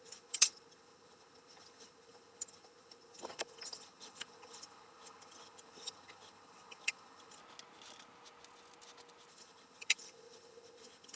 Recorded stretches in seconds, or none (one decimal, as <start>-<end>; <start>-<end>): 7.4-9.3